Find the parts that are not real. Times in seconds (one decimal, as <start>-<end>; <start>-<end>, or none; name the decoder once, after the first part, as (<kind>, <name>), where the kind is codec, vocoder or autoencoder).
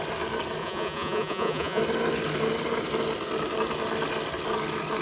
0.6-1.8 (vocoder, Vocos)